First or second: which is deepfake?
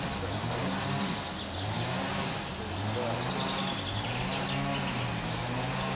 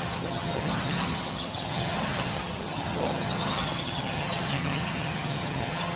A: second